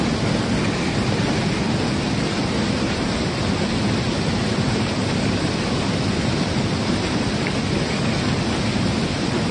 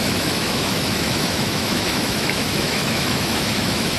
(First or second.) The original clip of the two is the first